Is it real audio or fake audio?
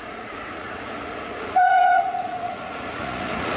fake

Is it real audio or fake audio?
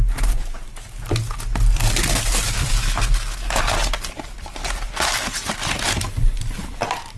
real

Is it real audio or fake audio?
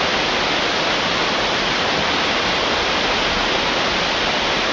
real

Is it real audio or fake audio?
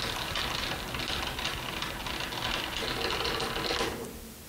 real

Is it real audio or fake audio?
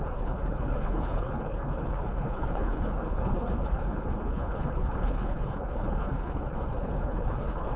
fake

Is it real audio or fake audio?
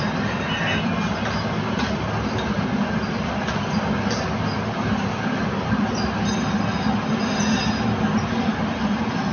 real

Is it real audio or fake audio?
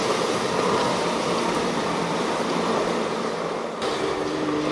fake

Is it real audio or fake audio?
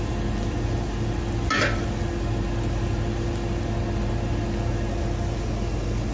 real